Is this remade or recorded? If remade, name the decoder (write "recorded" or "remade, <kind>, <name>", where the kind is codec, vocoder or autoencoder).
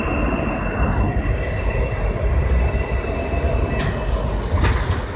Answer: recorded